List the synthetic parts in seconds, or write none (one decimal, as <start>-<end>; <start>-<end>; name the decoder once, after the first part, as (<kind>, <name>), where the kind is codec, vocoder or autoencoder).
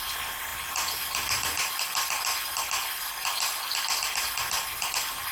none